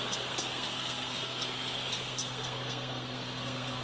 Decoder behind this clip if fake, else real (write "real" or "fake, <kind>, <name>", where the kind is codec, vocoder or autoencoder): fake, codec, SNAC